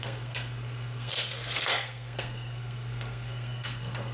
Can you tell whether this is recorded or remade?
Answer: remade